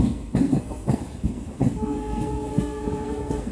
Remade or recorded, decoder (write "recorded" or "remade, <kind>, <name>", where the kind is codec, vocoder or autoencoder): remade, codec, SNAC